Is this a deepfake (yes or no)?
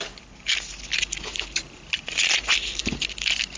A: no